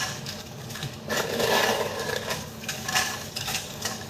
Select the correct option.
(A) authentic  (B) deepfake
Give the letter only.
B